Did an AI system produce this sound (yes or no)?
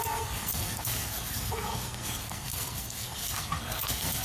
yes